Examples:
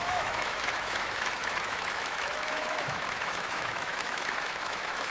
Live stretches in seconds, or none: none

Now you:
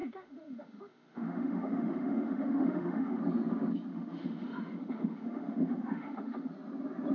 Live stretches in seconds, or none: 3.2-3.9; 6.5-7.1

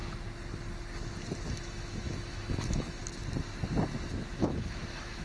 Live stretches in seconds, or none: 0.0-1.5; 3.0-4.3

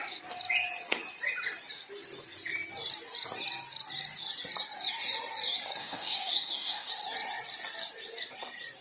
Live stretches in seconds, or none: 0.0-5.8; 6.9-8.8

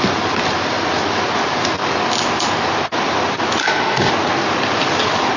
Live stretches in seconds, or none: 0.0-3.6; 4.1-5.4